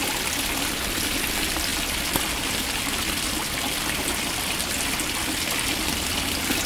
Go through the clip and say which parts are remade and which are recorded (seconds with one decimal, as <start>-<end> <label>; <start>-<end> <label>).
0.0-6.7 recorded